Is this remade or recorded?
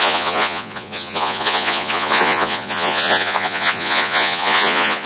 remade